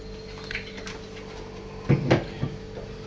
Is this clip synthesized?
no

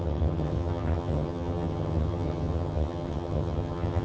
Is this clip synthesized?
yes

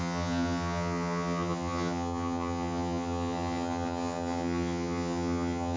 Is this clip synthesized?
yes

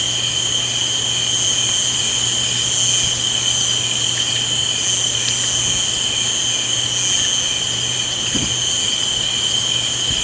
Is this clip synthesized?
no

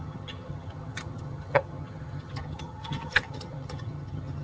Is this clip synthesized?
yes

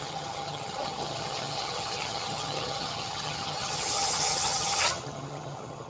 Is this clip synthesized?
yes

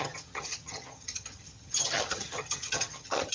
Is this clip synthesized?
yes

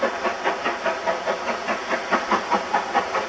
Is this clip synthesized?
no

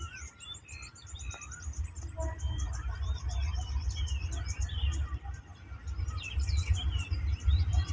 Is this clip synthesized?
no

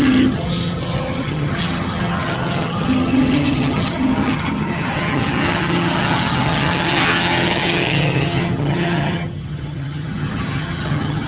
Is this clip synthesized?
yes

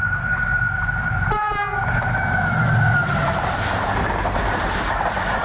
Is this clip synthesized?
no